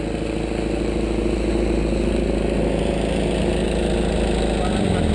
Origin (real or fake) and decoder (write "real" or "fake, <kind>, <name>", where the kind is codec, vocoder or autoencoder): real